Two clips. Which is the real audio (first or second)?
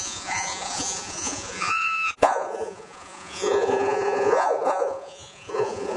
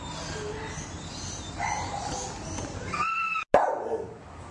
second